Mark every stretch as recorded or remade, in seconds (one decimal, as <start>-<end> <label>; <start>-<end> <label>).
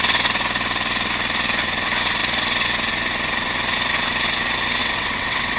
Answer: 0.0-4.8 recorded; 4.8-5.6 remade